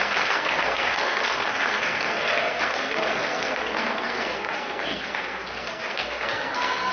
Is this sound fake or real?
fake